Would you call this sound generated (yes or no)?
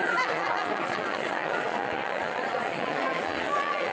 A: yes